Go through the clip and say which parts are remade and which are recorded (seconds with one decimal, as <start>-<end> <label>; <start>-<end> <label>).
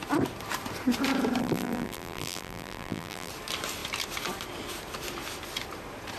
0.0-1.4 recorded; 1.4-3.3 remade; 3.3-6.2 recorded